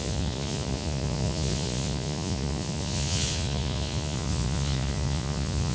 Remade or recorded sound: remade